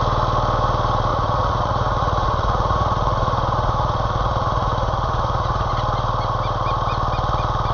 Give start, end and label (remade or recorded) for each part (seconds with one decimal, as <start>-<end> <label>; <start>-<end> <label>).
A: 0.0-1.1 recorded; 1.1-5.7 remade; 5.7-7.7 recorded